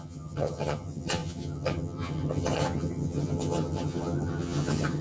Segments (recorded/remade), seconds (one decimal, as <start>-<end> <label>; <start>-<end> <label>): 0.0-5.0 remade

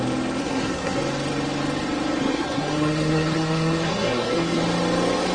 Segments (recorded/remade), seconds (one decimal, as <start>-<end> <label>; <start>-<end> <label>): 0.0-0.4 recorded; 0.4-1.0 remade; 1.0-2.2 recorded; 2.2-4.6 remade; 4.6-5.3 recorded